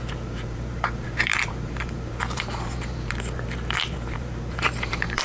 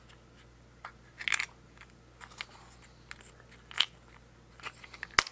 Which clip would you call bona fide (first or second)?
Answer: second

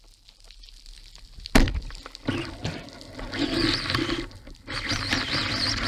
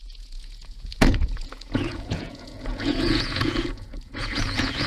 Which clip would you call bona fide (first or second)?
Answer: first